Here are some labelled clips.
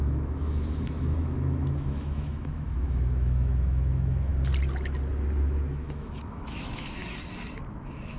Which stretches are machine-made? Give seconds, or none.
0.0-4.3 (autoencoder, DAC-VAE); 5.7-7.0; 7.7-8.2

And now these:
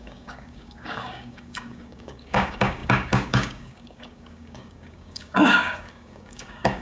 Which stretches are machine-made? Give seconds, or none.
0.0-6.8 (codec, DAC)

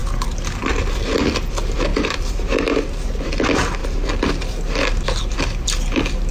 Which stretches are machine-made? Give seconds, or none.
0.0-6.3 (vocoder, BigVGAN v2)

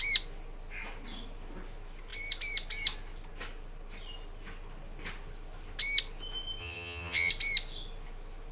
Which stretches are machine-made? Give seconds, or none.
6.6-7.3 (vocoder, HiFi-GAN)

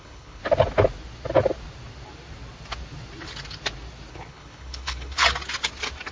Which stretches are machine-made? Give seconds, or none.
0.0-0.4 (codec, HILCodec); 4.1-5.2

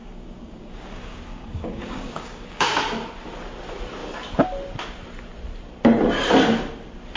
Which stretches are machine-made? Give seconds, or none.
0.0-2.8 (codec, DAC)